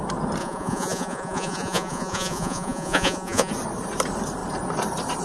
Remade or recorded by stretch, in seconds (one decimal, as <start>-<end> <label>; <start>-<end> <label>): 0.0-0.4 recorded; 0.4-3.5 remade; 3.5-5.2 recorded